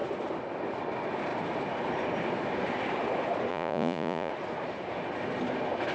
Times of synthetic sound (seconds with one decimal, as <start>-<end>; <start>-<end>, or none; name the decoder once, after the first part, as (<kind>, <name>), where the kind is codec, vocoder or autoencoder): 3.5-4.3 (vocoder, Vocos)